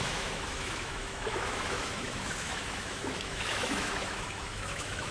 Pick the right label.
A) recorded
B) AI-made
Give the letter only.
B